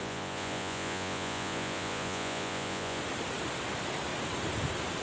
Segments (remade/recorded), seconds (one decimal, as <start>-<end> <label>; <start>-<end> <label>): 0.0-3.0 remade; 3.0-5.0 recorded